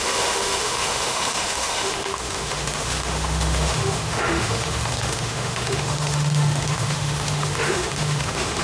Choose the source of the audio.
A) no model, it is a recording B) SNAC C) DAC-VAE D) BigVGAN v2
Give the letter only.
C